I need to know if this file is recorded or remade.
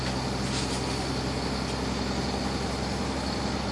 recorded